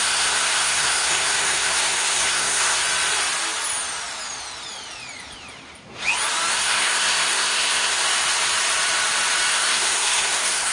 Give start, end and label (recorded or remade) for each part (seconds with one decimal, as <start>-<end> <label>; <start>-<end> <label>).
0.0-2.8 remade; 2.8-6.5 recorded; 6.5-8.0 remade; 8.0-9.5 recorded; 9.5-10.7 remade